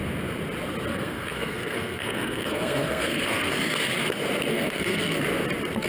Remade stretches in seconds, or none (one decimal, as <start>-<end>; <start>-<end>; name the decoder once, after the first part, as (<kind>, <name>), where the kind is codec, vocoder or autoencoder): 0.9-3.5 (codec, SNAC); 4.5-5.2